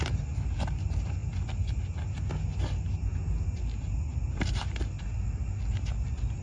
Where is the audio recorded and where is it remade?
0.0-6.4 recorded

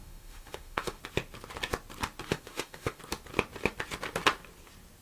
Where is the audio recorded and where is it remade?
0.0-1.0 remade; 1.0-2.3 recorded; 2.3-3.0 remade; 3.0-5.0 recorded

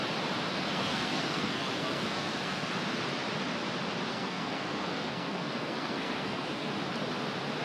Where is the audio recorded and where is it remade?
0.0-0.5 recorded; 0.5-2.7 remade; 2.7-4.1 recorded; 4.1-6.7 remade; 6.7-7.6 recorded

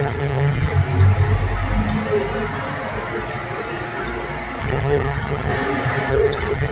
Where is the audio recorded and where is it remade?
0.0-0.7 remade; 0.7-4.6 recorded; 4.6-5.5 remade; 5.5-6.1 recorded; 6.1-6.7 remade